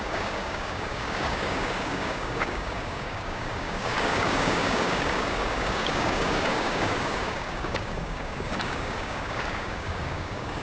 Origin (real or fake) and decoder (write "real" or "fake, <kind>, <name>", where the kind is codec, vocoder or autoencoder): fake, codec, DAC